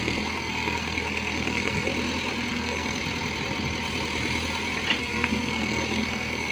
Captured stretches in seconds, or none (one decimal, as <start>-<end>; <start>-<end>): 1.9-2.5; 3.0-5.0